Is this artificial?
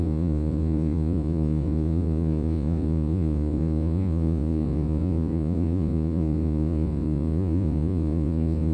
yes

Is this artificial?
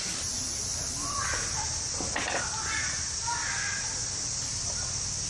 no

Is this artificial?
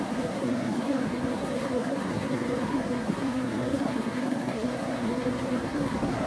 yes